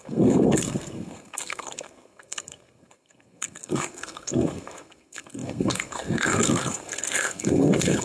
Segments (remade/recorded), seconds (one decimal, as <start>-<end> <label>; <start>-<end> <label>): 0.0-8.0 remade